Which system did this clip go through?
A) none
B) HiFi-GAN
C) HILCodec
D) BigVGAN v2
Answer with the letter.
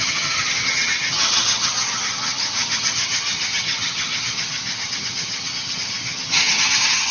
B